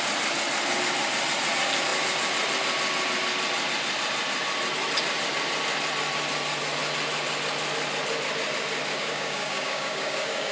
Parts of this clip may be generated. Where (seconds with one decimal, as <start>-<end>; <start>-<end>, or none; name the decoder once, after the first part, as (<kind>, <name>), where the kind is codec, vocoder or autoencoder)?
9.0-10.5 (codec, DAC)